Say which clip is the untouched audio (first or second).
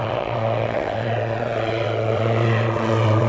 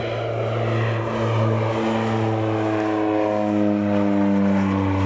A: second